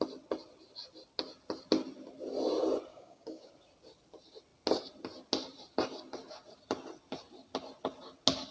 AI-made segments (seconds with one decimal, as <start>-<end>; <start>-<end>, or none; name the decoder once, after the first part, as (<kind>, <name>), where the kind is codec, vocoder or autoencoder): 2.9-3.5 (codec, DAC)